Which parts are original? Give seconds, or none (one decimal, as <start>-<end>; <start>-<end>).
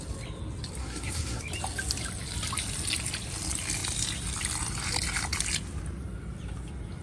0.0-0.8; 1.4-7.0